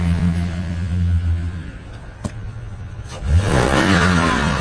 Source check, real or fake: fake